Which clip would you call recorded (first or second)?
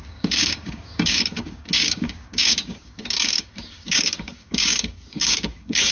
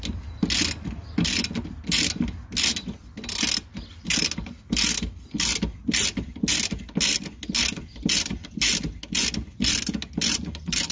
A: second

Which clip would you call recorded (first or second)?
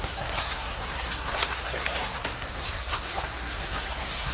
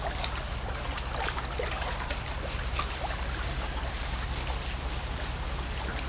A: second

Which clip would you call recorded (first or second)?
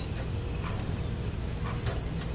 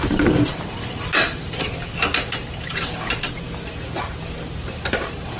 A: first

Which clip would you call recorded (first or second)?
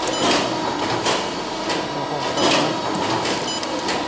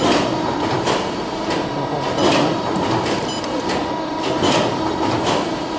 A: first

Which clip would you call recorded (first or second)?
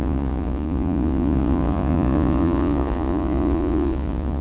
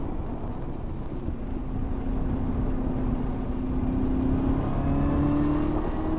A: second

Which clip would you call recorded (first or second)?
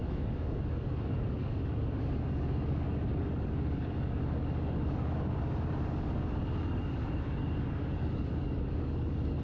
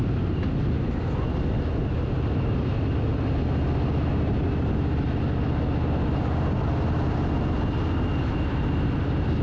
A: second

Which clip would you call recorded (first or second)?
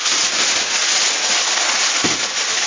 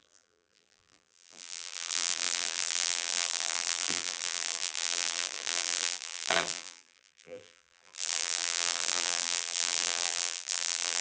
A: first